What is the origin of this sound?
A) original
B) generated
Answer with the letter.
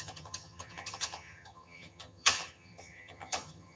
B